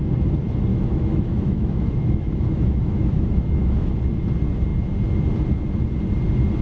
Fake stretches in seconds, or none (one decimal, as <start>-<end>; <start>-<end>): 0.7-3.9